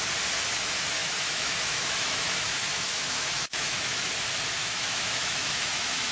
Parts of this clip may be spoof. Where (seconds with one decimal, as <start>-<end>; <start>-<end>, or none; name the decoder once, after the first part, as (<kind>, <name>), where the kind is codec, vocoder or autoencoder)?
1.0-4.1 (autoencoder, DAC-VAE); 4.6-6.1